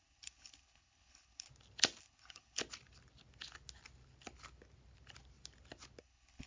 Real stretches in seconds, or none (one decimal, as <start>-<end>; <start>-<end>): 1.5-2.0; 2.6-6.0